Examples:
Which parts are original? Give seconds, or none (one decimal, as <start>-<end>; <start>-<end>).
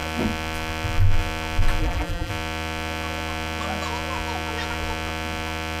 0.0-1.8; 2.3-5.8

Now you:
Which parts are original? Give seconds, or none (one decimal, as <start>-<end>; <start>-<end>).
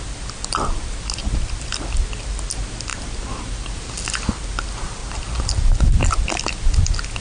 0.0-5.0; 6.0-7.2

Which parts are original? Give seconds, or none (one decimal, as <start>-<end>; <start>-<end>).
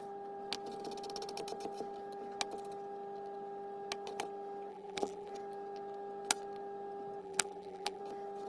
0.0-4.7; 5.3-7.2; 8.0-8.5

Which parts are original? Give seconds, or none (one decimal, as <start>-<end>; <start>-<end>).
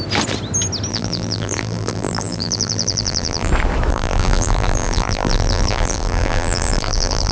0.0-0.9; 3.5-3.9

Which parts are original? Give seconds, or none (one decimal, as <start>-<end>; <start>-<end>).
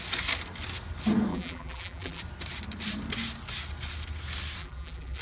0.0-1.3; 2.2-4.6